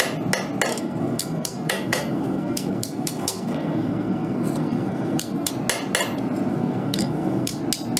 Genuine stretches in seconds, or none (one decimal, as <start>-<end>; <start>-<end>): 0.0-0.7; 5.5-6.5; 7.6-8.0